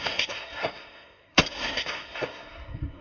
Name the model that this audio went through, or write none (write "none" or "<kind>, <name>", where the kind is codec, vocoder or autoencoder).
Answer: codec, SNAC